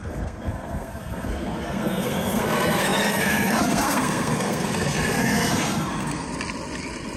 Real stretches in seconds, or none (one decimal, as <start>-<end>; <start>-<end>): 6.3-7.2